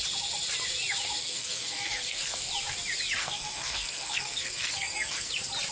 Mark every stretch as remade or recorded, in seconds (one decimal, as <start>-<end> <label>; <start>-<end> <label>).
0.0-1.2 recorded; 1.2-2.5 remade; 2.5-3.2 recorded; 3.2-5.3 remade; 5.3-5.7 recorded